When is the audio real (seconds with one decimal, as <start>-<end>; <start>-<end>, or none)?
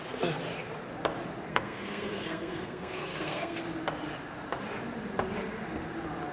0.0-1.5; 3.6-6.3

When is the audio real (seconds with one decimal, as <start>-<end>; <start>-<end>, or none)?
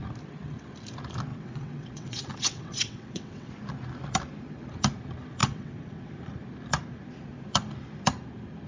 0.0-1.3; 3.5-5.4; 6.1-8.7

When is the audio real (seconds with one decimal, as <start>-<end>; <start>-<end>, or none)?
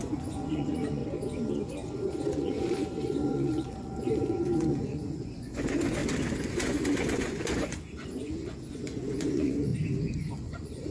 1.0-2.1; 6.0-6.5; 9.7-10.3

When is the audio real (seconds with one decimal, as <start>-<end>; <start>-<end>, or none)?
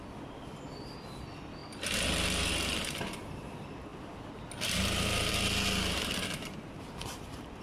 0.0-7.6